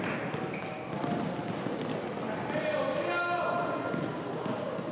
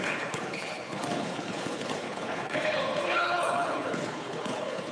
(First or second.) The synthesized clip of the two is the second